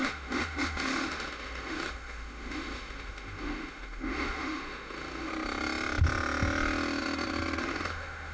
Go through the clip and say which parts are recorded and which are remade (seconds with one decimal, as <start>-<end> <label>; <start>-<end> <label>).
0.0-5.3 remade; 5.3-7.6 recorded; 7.6-8.3 remade

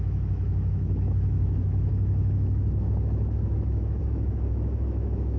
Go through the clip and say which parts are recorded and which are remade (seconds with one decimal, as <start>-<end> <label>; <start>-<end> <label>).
0.0-5.4 remade

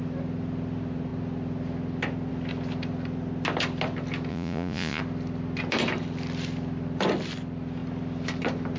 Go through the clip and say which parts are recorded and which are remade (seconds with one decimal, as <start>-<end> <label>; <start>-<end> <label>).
0.0-4.3 recorded; 4.3-5.0 remade; 5.0-8.8 recorded